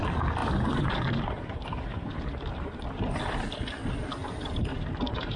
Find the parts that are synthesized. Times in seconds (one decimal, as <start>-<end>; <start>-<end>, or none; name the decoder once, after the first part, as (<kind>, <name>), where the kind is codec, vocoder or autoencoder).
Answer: 0.4-3.6 (vocoder, BigVGAN v2); 4.2-5.4